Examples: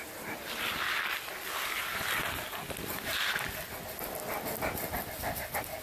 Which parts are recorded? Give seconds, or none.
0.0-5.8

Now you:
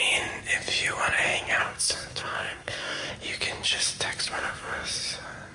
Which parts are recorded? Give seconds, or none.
0.0-1.6; 3.1-4.3; 4.9-5.5

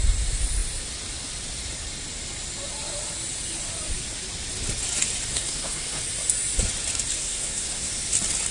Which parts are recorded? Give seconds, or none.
0.0-5.3; 6.0-7.1; 7.9-8.5

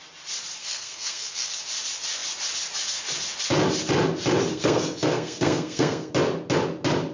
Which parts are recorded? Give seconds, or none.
0.0-0.6; 1.6-4.5; 6.1-7.1

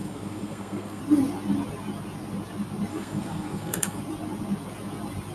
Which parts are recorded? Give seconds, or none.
1.0-2.9; 4.0-5.3

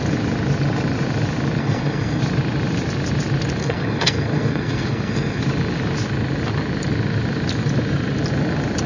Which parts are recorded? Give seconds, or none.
0.0-1.6; 2.2-3.6; 5.4-8.9

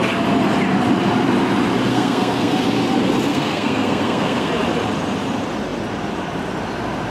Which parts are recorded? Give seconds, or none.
0.0-1.9; 2.6-3.3; 4.5-7.1

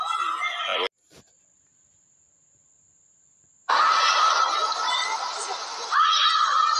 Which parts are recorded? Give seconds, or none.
0.0-6.8